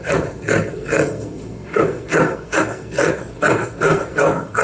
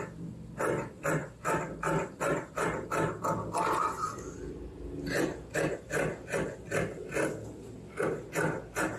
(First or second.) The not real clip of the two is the first